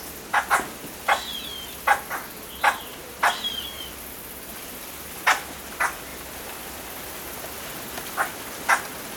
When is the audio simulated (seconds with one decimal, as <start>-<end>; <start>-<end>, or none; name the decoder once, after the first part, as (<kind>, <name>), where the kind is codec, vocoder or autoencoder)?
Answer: 2.8-3.9 (vocoder, BigVGAN v2); 4.5-5.2; 6.1-7.0